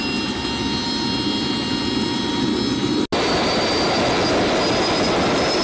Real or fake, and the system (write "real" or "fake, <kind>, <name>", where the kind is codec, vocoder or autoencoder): real